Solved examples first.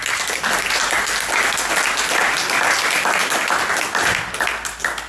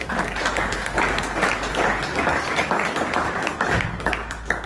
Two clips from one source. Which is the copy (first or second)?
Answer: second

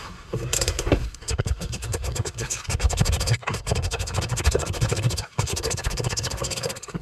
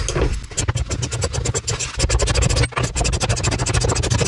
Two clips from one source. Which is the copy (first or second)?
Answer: first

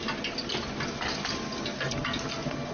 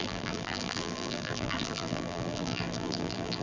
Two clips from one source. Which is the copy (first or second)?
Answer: second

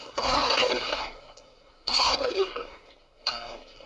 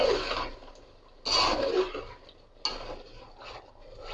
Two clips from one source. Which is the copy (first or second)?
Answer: first